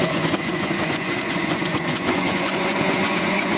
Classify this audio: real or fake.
fake